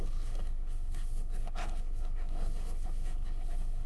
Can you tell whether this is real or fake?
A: fake